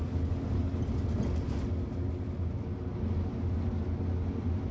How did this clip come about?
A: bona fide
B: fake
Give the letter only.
A